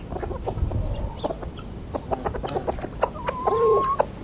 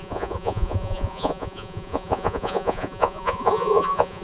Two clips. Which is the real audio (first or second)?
first